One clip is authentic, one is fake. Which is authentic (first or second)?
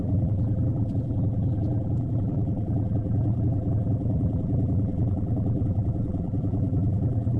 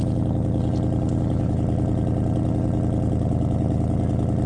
second